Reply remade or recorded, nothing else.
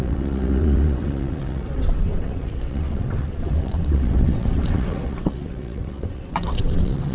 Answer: remade